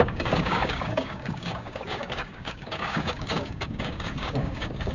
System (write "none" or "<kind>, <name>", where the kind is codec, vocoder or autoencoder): codec, DAC